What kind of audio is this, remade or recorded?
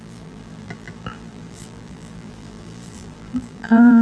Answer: remade